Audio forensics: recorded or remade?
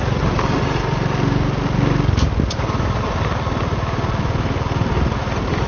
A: recorded